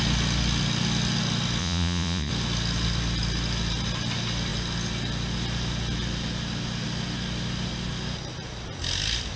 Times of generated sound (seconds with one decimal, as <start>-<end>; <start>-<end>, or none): 1.6-2.3